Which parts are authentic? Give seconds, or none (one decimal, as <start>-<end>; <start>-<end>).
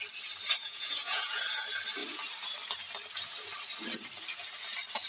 0.0-0.6; 1.4-5.1